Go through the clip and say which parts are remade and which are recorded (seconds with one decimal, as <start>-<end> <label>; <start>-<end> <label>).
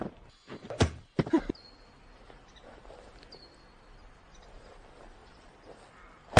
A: 0.0-6.4 recorded